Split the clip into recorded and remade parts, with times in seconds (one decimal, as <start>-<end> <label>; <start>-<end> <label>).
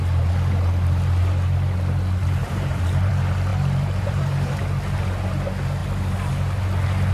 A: 0.0-2.4 recorded; 2.4-3.1 remade; 3.1-3.5 recorded; 3.5-4.6 remade; 4.6-7.1 recorded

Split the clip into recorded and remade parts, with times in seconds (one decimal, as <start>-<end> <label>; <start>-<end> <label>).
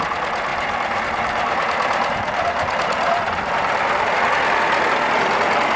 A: 0.0-0.5 recorded; 0.5-4.0 remade; 4.0-5.8 recorded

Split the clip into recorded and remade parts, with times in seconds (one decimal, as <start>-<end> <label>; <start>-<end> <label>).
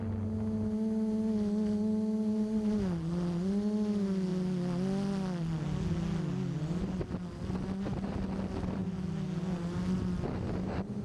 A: 0.0-11.0 recorded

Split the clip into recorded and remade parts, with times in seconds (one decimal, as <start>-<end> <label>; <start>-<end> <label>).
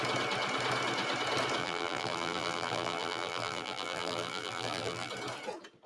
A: 0.0-1.6 recorded; 1.6-5.1 remade; 5.1-5.9 recorded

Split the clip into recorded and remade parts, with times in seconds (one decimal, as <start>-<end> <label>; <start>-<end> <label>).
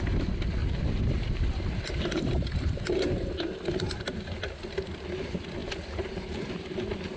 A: 0.0-0.6 recorded; 0.6-3.3 remade; 3.3-5.6 recorded; 5.6-6.5 remade; 6.5-7.2 recorded